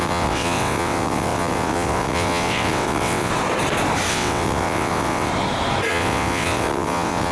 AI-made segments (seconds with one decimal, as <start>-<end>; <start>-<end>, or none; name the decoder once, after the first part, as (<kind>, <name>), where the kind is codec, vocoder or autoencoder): 0.0-3.3 (vocoder, WaveNeXt); 4.1-5.3; 5.9-7.3